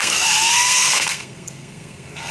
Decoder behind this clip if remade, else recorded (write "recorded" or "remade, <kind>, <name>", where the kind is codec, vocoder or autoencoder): remade, codec, SNAC